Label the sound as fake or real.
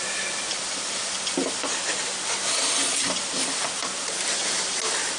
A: real